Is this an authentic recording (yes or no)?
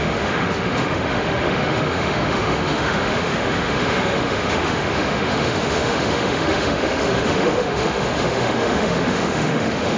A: no